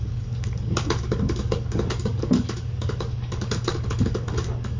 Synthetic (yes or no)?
yes